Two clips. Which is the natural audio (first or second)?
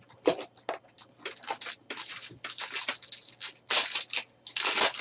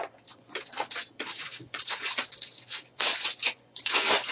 first